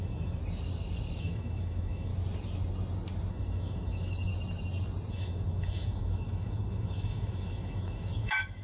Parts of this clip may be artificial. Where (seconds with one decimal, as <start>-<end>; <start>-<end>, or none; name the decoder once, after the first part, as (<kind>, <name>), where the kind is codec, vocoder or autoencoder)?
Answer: 0.0-0.4 (autoencoder, DAC-VAE); 1.2-2.1; 3.3-4.3; 5.1-8.6

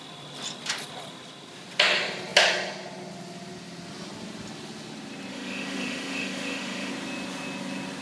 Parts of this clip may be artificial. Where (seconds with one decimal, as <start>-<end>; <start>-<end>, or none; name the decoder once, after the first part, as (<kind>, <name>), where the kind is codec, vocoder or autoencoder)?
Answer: 5.3-6.9 (autoencoder, DAC-VAE)

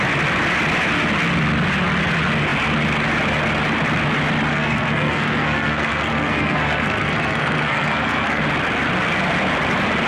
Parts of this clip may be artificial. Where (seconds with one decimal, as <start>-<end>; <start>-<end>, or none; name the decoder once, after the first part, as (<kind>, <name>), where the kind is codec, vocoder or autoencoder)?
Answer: 4.5-8.4 (codec, SNAC)

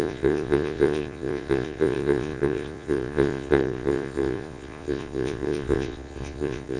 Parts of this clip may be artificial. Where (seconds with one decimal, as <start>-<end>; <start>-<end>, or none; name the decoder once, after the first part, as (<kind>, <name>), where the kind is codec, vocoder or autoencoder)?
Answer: 0.0-6.8 (vocoder, Vocos)

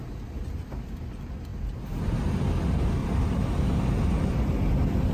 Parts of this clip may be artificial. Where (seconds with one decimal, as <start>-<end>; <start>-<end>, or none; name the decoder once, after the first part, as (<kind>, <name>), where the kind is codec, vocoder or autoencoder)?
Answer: 1.5-2.0 (vocoder, BigVGAN v2); 3.0-4.2

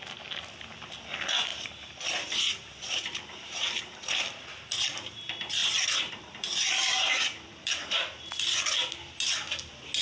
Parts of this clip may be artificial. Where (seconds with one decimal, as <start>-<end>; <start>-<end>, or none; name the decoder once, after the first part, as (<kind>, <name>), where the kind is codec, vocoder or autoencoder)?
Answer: 1.5-4.0 (vocoder, BigVGAN v2); 5.6-8.4

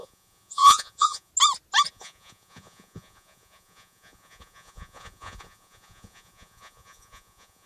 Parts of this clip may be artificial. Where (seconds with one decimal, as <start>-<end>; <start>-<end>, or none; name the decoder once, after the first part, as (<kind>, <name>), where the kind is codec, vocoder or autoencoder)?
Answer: 0.0-1.3 (vocoder, Vocos); 1.9-7.7